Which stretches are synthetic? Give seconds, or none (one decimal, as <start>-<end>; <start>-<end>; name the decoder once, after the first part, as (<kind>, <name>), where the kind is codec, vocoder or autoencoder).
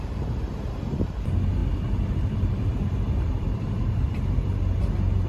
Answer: 0.0-1.6 (vocoder, BigVGAN v2); 2.1-5.3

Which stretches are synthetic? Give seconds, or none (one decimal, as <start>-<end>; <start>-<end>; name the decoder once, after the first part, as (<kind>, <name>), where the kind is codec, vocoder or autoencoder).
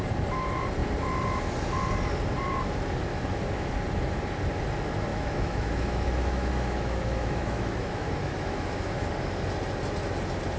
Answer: 3.1-3.7 (autoencoder, DAC-VAE); 5.1-9.1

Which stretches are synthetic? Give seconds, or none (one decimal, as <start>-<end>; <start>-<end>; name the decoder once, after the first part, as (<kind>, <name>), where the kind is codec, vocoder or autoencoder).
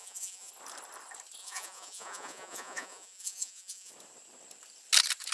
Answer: 0.0-0.5 (vocoder, Vocos); 1.4-3.9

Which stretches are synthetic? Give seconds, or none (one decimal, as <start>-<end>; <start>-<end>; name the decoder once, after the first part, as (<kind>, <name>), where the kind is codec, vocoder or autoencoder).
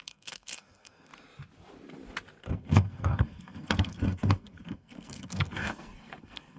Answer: 0.0-1.1 (codec, SNAC); 2.4-6.6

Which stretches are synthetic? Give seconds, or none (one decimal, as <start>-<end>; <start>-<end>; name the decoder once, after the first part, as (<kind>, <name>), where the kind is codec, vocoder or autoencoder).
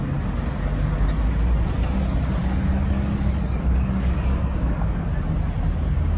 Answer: 2.4-5.1 (codec, DAC)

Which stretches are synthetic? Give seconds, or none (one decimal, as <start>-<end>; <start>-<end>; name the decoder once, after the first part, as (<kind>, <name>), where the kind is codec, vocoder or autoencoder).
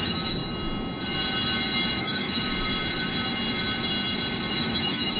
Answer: 0.0-0.4 (autoencoder, DAC-VAE); 2.0-2.4; 4.6-5.2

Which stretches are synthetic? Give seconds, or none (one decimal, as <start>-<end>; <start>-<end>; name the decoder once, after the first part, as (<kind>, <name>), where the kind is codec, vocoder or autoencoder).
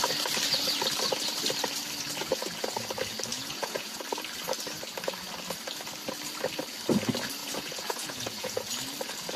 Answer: 3.3-4.0 (vocoder, Vocos); 7.4-8.7